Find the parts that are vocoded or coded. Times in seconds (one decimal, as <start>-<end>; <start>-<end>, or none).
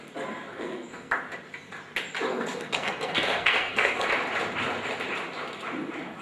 0.5-1.1; 2.3-4.1